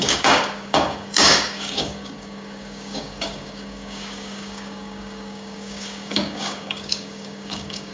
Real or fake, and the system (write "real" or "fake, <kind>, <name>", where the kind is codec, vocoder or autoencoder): fake, codec, DAC